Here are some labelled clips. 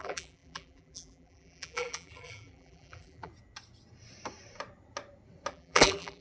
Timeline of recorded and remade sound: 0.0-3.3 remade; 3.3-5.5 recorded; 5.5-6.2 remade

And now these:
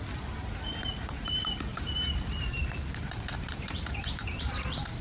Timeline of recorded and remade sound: 0.0-1.7 recorded; 1.7-4.4 remade; 4.4-5.0 recorded

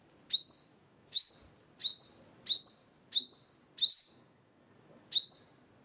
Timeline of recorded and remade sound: 0.0-0.7 recorded; 0.7-1.3 remade; 1.3-3.9 recorded; 3.9-4.6 remade; 4.6-5.8 recorded

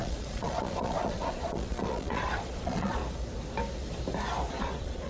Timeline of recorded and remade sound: 0.0-3.0 remade; 3.0-4.5 recorded; 4.5-5.1 remade

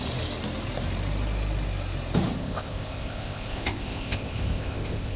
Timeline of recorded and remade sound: 0.0-2.4 recorded; 2.4-5.2 remade

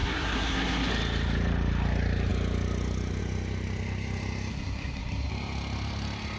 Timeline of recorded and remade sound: 0.0-0.9 remade; 0.9-4.5 recorded; 4.5-5.3 remade; 5.3-6.4 recorded